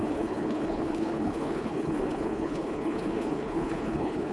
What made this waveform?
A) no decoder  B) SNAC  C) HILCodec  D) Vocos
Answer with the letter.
C